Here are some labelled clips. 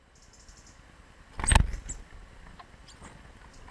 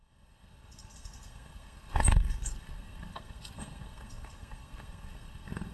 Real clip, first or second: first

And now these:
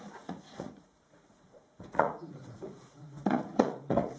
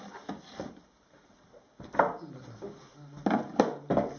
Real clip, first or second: second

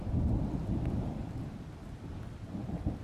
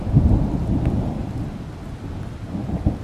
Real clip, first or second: second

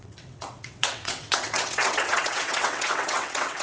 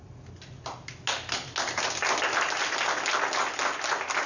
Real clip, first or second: second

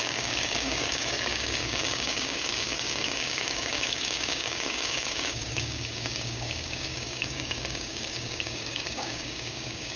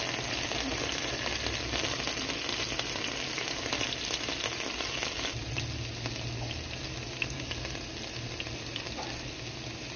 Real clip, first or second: second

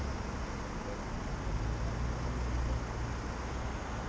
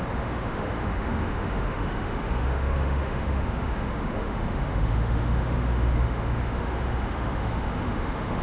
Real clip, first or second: first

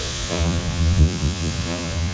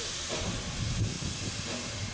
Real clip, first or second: second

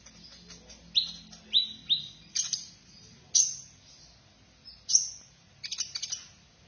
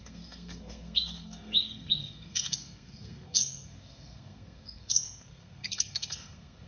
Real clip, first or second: first